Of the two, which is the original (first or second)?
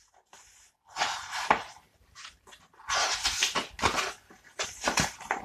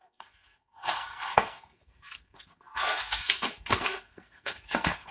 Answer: first